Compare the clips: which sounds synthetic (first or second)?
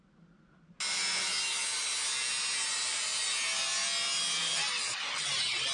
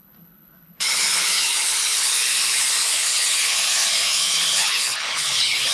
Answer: second